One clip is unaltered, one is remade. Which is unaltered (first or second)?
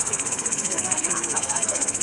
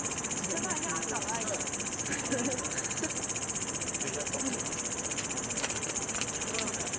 second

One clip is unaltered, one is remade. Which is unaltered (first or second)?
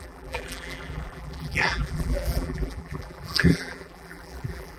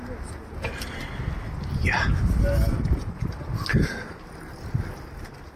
second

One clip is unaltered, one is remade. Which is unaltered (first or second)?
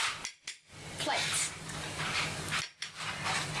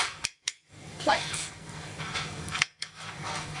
first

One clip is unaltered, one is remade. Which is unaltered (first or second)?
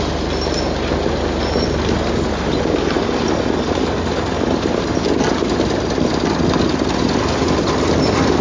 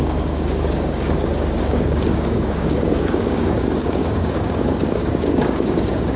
first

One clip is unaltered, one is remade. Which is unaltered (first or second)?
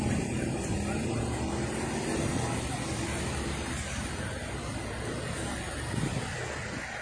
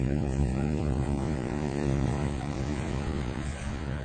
first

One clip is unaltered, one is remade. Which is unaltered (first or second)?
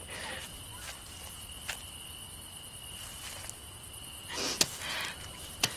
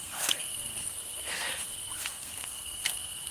first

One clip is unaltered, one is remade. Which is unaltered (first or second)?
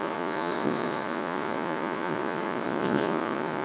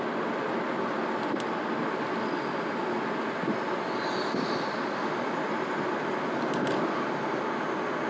second